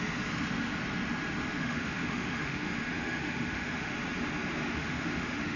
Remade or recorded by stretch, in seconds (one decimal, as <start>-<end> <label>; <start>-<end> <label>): 0.0-1.6 recorded; 1.6-3.9 remade; 3.9-4.6 recorded; 4.6-5.6 remade